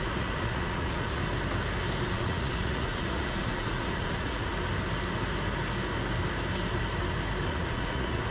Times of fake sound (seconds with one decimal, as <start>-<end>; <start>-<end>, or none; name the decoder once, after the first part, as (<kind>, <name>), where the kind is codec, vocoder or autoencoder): 0.0-1.2 (vocoder, Vocos); 2.1-4.5; 7.5-8.3